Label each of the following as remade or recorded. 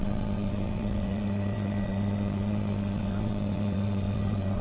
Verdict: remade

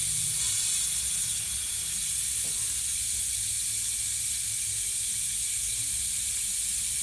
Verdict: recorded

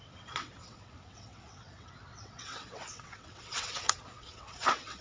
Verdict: remade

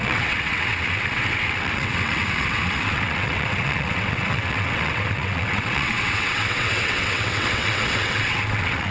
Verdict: remade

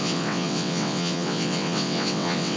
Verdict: remade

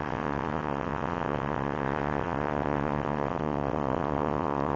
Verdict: remade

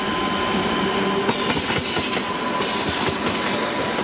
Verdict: recorded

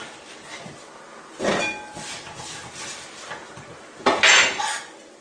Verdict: recorded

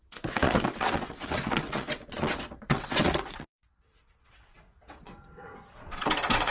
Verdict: remade